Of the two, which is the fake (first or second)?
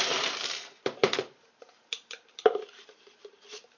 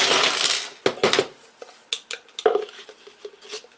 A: first